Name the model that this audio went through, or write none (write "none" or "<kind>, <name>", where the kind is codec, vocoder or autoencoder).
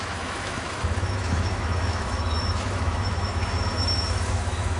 autoencoder, DAC-VAE